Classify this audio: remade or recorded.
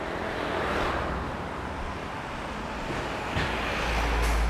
recorded